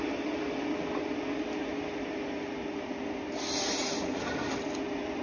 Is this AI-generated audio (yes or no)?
no